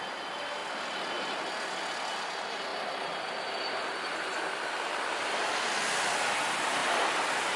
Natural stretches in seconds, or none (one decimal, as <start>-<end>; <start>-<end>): 0.0-7.6

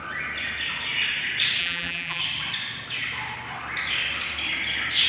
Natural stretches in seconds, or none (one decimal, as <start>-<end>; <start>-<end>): 0.0-1.6; 2.2-5.1

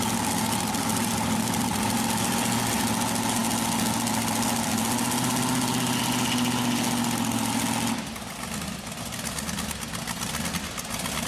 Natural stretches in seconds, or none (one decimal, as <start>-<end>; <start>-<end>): 0.0-11.3

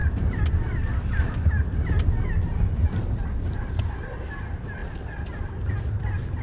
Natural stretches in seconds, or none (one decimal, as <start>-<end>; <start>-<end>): 0.0-6.4

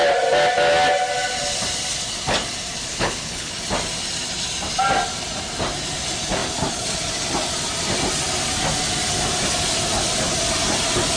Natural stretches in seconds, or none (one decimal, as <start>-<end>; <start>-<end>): 0.0-2.9; 3.5-11.2

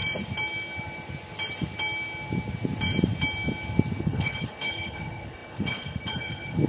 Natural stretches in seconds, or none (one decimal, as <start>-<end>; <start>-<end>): 0.0-4.0

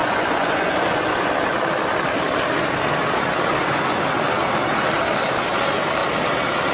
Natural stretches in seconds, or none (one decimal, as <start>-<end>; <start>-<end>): 1.3-3.6; 4.1-6.7

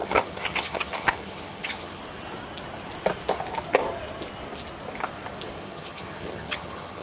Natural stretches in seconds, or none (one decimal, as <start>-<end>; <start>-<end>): 2.0-5.6